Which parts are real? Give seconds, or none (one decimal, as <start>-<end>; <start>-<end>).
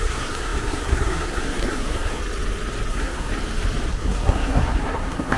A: 2.2-2.9; 3.3-3.9